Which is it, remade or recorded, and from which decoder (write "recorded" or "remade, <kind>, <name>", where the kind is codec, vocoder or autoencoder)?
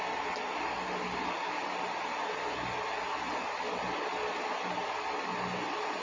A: recorded